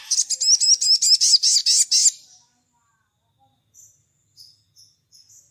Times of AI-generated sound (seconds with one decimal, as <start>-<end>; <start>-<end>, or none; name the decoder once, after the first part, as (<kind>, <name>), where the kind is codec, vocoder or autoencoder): none